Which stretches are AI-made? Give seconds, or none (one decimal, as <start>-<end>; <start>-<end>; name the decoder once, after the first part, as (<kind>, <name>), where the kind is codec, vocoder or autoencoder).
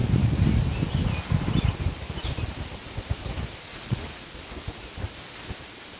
3.7-4.4 (vocoder, Vocos)